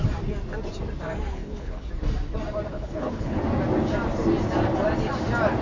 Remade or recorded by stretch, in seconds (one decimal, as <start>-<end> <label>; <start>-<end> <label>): 0.0-1.3 recorded; 1.3-1.9 remade; 1.9-2.7 recorded; 2.7-3.4 remade; 3.4-5.6 recorded